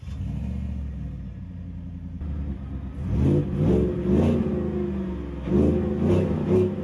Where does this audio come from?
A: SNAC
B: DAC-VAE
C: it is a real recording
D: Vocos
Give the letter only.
C